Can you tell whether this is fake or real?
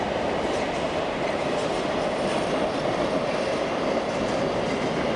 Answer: real